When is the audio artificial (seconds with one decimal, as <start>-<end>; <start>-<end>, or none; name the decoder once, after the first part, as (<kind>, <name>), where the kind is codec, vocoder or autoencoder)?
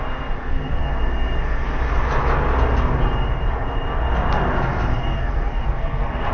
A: 0.4-0.9 (codec, SNAC); 5.0-6.3